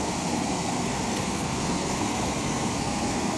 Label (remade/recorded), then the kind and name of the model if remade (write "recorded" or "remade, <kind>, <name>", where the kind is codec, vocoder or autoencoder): remade, codec, SNAC